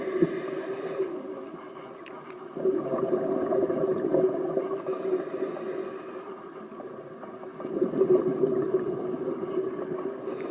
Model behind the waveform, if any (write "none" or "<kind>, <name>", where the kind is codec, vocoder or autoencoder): none